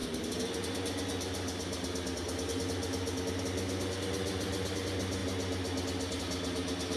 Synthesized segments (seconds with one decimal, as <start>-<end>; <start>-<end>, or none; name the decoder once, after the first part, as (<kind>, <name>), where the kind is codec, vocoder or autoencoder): none